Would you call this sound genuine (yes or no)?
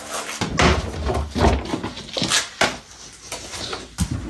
yes